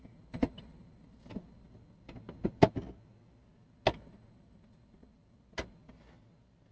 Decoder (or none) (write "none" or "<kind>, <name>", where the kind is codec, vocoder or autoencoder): none